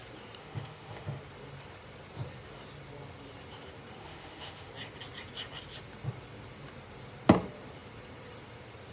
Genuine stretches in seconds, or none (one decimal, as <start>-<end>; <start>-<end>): 0.0-0.4; 1.2-4.0; 4.7-8.9